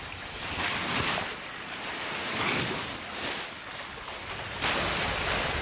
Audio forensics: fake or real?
real